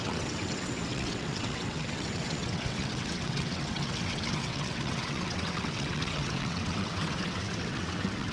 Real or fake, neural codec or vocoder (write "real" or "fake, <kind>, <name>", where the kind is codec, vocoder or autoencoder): fake, vocoder, WaveNeXt